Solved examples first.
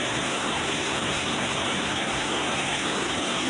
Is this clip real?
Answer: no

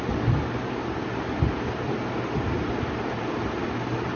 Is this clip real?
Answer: yes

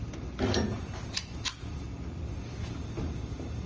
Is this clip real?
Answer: yes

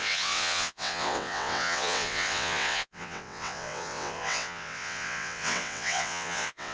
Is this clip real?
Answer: no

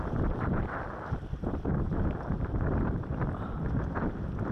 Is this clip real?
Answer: no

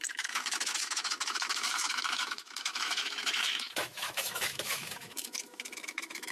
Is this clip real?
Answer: no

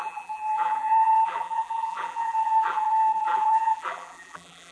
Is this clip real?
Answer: no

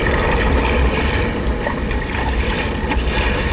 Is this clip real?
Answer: yes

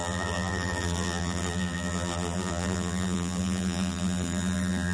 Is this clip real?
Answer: no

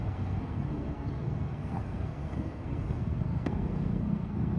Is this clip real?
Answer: no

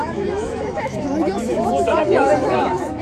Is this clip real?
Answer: no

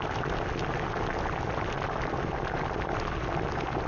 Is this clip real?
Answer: yes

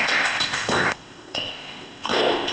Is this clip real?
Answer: no